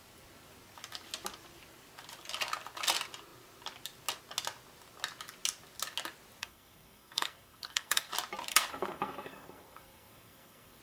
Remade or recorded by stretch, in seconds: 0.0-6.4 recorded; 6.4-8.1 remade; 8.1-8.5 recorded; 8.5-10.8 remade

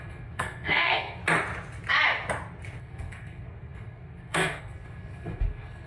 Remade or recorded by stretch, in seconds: 0.0-1.2 remade; 1.2-2.8 recorded; 2.8-5.9 remade

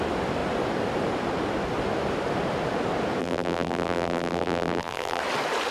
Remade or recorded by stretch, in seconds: 0.0-3.2 recorded; 3.2-5.2 remade; 5.2-5.7 recorded

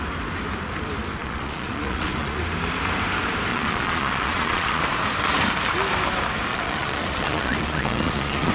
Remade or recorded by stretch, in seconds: 0.0-1.2 recorded; 1.2-2.4 remade; 2.4-3.5 recorded; 3.5-4.8 remade; 4.8-6.5 recorded; 6.5-8.5 remade

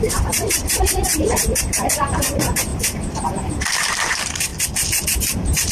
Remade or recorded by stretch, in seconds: 0.0-4.5 remade; 4.5-5.2 recorded; 5.2-5.7 remade